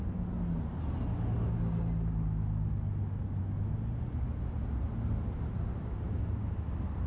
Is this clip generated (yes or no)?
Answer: no